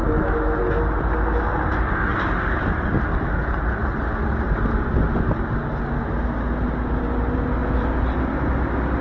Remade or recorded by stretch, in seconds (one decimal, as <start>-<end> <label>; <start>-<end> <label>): 0.0-9.0 recorded